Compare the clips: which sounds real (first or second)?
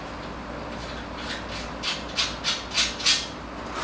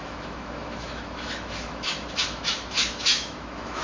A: first